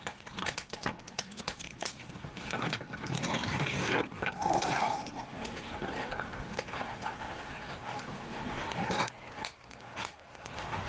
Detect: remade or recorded remade